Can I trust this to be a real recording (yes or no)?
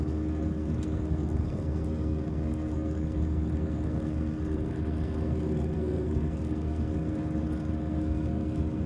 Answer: no